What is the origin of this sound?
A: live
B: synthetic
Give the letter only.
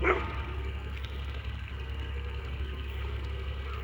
B